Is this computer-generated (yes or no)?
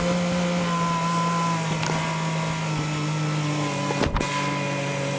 no